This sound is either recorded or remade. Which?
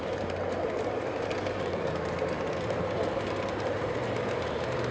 remade